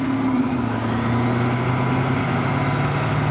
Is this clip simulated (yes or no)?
no